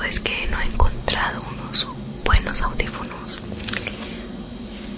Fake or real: fake